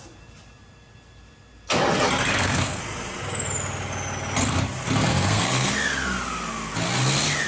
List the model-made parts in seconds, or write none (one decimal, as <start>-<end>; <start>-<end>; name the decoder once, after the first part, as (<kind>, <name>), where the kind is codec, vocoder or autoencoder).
2.3-2.8 (codec, SNAC); 5.1-5.7